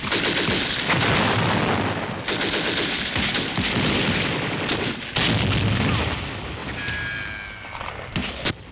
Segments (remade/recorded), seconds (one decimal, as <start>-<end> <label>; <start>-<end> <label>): 0.0-8.7 recorded